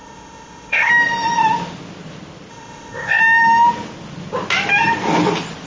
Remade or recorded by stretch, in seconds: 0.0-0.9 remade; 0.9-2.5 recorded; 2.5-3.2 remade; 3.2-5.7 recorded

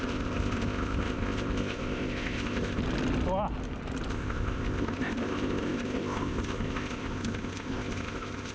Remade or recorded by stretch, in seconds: 0.0-2.8 remade; 2.8-4.1 recorded; 4.1-8.5 remade

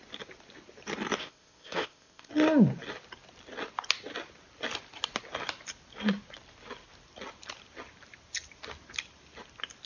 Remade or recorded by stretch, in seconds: 0.0-1.2 recorded; 1.2-2.3 remade; 2.3-9.9 recorded

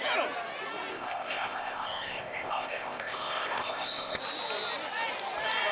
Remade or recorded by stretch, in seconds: 0.0-0.9 recorded; 0.9-4.2 remade; 4.2-5.7 recorded

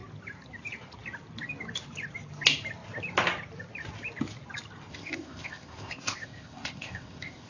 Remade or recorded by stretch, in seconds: 0.0-4.9 recorded; 4.9-7.5 remade

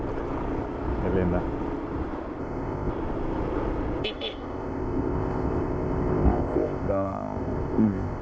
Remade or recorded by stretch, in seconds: 0.0-2.4 recorded; 2.4-2.9 remade; 2.9-4.0 recorded; 4.0-8.2 remade

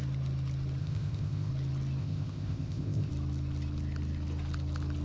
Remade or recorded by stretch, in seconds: 0.0-0.8 recorded; 0.8-1.5 remade; 1.5-2.0 recorded; 2.0-3.1 remade; 3.1-5.0 recorded

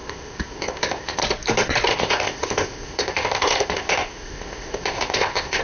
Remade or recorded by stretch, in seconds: 0.0-1.2 remade; 1.2-1.9 recorded; 1.9-5.6 remade